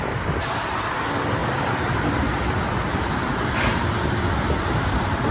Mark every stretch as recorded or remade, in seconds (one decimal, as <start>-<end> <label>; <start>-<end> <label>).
0.0-1.4 recorded; 1.4-2.6 remade; 2.6-5.3 recorded